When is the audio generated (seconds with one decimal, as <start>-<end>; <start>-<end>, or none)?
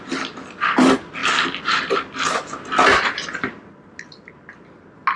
none